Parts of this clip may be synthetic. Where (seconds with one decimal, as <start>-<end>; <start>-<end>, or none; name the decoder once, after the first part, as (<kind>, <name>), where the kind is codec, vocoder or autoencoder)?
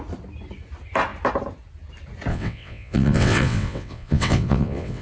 2.3-5.0 (vocoder, WaveNeXt)